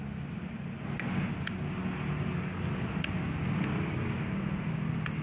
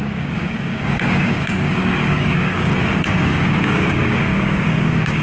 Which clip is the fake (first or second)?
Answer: second